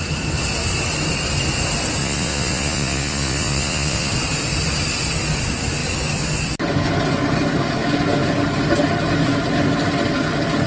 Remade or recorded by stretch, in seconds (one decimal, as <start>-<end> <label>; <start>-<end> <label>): 0.0-2.0 recorded; 2.0-4.1 remade; 4.1-10.7 recorded